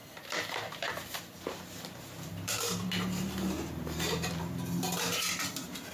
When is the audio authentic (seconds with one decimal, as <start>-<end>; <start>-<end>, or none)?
none